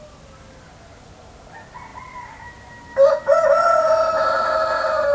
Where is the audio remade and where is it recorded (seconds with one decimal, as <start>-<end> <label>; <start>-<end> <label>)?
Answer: 0.0-5.1 recorded